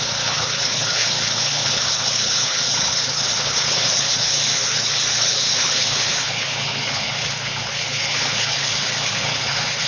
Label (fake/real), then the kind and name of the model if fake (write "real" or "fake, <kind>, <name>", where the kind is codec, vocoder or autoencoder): fake, codec, HILCodec